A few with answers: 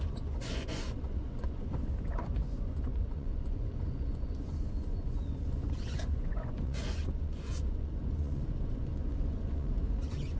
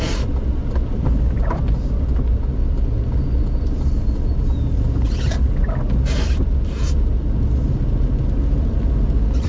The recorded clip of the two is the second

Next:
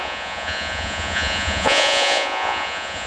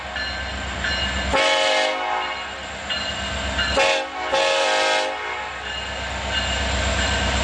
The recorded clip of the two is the second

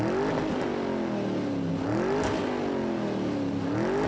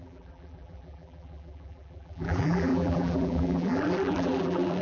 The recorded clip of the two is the first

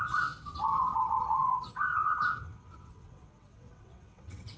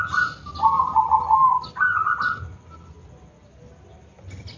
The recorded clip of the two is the second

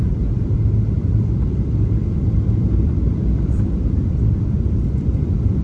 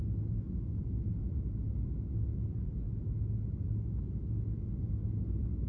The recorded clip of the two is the second